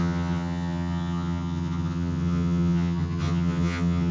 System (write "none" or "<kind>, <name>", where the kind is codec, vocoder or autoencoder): vocoder, HiFi-GAN